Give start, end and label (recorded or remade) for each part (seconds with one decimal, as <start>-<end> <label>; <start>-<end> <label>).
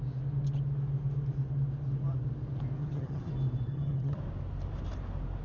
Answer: 0.0-2.8 recorded; 2.8-3.3 remade; 3.3-3.7 recorded; 3.7-4.2 remade; 4.2-5.4 recorded